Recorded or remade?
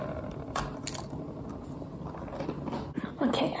recorded